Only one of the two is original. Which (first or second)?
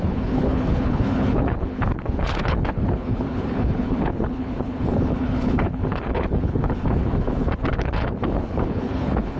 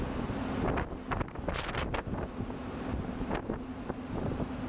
second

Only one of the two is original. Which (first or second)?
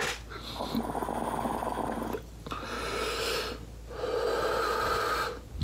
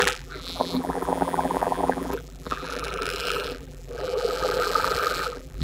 first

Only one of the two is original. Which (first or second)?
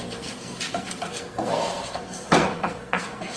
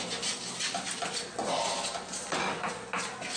second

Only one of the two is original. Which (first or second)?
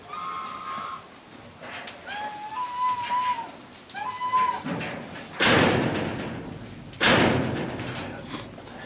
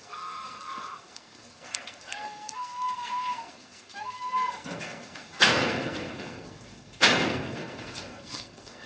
first